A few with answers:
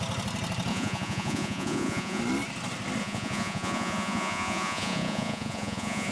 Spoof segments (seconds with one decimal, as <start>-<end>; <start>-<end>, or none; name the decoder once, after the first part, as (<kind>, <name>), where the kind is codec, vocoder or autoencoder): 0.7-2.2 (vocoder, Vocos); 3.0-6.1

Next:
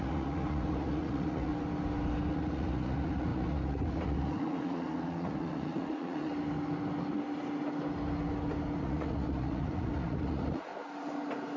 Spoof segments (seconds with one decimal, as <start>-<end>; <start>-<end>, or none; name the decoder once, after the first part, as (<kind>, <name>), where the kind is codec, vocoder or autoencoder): 0.0-1.5 (vocoder, Vocos); 2.3-6.3; 8.8-10.7

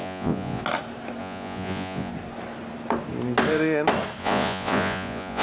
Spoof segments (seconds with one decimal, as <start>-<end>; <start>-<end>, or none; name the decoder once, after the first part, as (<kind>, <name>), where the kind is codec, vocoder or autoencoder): 0.0-0.6 (vocoder, Vocos); 1.2-2.1; 4.2-5.4

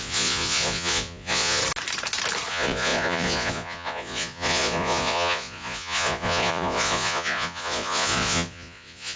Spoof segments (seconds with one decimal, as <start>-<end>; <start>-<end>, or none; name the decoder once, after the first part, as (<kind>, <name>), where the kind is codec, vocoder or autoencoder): 0.0-1.6 (vocoder, Vocos); 2.5-9.2

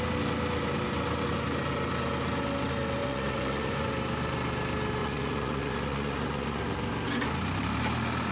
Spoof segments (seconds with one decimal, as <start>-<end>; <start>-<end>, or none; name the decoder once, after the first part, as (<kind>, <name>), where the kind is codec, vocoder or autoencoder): 3.0-3.9 (vocoder, Vocos); 5.0-6.6

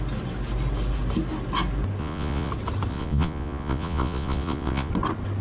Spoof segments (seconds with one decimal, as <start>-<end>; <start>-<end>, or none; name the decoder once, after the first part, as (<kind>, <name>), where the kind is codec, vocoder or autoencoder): 2.0-2.5 (vocoder, Vocos); 2.9-4.9

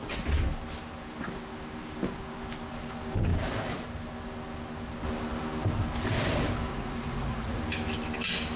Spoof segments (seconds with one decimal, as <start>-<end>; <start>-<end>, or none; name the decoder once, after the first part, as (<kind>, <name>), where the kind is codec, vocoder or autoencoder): 6.7-7.6 (vocoder, Vocos)

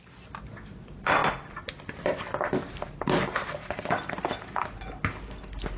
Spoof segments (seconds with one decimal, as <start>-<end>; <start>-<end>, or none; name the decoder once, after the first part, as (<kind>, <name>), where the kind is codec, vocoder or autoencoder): none